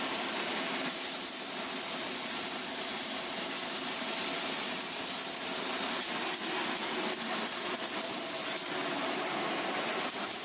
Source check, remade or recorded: recorded